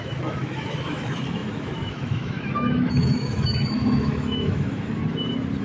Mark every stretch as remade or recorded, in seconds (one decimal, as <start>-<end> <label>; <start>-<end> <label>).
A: 0.0-5.0 remade; 5.0-5.6 recorded